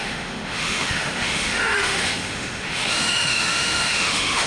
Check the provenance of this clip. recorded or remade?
remade